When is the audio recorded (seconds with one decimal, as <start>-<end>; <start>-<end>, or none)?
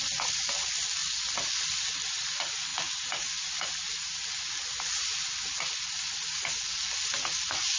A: 0.0-7.8